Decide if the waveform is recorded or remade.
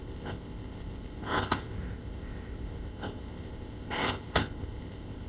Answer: remade